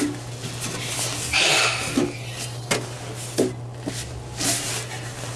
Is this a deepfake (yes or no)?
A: no